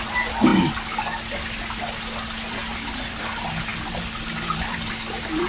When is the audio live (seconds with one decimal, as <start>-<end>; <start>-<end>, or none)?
0.5-1.3